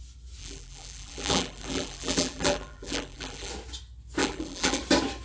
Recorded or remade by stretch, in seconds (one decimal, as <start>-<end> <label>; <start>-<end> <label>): 0.0-0.4 recorded; 0.4-3.5 remade; 3.5-4.2 recorded; 4.2-4.8 remade; 4.8-5.2 recorded